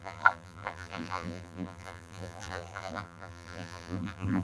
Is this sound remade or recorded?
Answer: remade